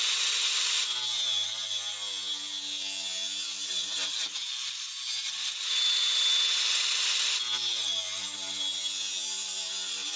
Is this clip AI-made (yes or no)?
no